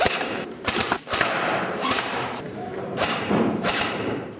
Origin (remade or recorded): remade